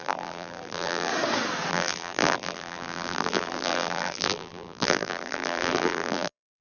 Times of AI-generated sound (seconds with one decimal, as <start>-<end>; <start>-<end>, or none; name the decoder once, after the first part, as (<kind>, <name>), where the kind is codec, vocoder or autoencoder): 0.0-1.1 (vocoder, BigVGAN v2); 1.7-6.6